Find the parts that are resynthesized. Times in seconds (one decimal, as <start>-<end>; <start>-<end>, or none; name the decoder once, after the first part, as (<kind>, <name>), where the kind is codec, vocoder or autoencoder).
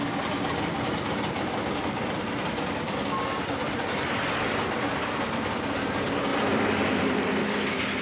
none